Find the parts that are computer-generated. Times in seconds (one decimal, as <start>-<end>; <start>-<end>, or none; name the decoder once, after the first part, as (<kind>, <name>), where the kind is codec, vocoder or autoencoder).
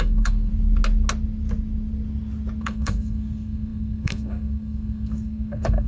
0.0-0.5 (codec, SNAC); 2.6-5.9